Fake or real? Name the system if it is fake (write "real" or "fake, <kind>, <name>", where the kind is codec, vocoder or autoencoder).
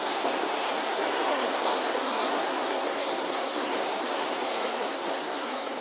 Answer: fake, codec, SNAC